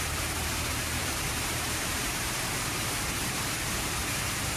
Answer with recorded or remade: remade